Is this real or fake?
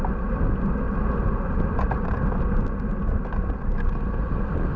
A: real